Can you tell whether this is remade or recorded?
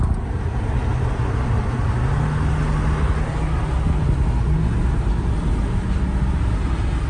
recorded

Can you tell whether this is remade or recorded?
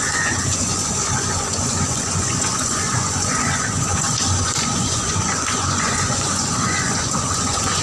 remade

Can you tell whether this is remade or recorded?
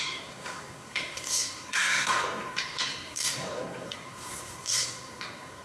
remade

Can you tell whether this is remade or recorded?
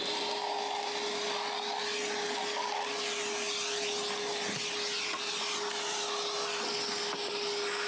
recorded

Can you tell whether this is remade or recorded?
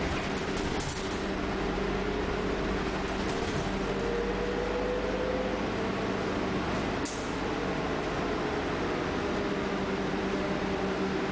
recorded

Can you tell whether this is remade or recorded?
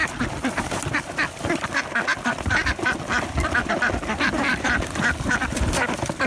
remade